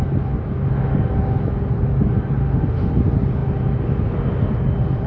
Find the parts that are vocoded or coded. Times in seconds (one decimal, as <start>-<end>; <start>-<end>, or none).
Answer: 2.4-2.9